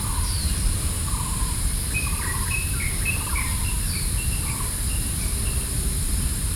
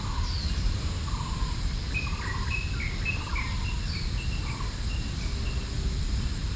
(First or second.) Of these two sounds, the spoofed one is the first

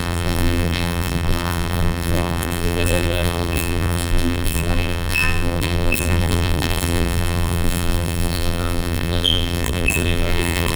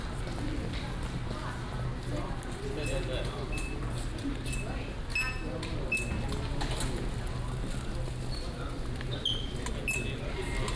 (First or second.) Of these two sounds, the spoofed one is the first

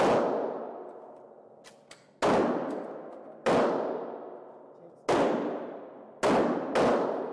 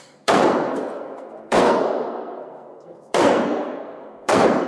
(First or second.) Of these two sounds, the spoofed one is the second